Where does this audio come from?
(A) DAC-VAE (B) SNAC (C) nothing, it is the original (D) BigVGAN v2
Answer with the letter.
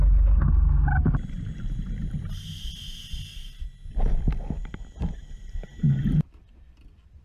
C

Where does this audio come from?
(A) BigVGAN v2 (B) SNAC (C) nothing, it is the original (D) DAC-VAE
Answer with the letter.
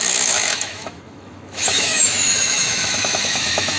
D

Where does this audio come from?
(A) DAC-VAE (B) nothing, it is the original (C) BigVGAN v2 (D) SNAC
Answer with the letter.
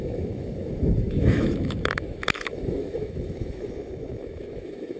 A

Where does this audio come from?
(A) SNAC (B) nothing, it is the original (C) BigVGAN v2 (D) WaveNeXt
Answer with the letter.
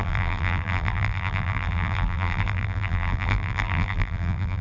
C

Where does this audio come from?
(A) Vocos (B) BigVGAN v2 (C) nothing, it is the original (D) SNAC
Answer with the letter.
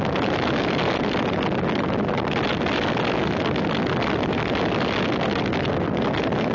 C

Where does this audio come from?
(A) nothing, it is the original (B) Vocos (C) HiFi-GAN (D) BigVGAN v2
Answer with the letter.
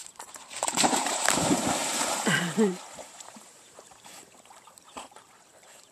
D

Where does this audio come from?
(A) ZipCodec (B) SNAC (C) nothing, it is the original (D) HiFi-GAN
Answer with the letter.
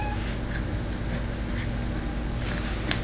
C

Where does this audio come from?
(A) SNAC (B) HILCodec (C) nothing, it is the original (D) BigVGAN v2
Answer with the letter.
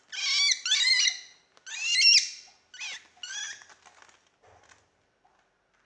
C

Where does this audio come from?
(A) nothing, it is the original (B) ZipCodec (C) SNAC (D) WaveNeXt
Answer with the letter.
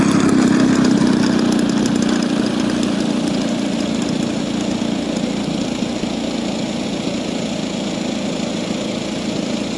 A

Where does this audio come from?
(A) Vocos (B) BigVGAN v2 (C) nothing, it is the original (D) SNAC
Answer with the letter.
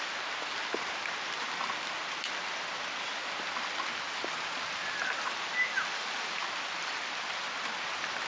C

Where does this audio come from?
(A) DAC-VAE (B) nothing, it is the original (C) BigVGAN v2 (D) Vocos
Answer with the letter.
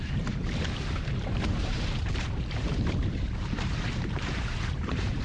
C